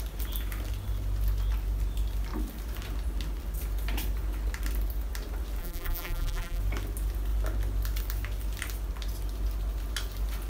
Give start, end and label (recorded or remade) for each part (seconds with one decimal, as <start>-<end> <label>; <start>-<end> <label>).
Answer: 0.0-5.6 recorded; 5.6-6.6 remade; 6.6-10.5 recorded